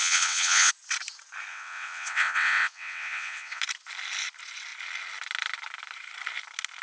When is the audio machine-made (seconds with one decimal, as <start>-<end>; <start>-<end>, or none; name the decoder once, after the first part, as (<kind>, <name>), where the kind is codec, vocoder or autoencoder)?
0.0-0.7 (vocoder, WaveNeXt); 1.5-3.6